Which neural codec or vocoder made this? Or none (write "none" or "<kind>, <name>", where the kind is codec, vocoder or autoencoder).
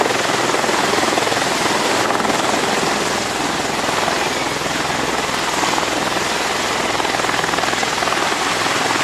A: none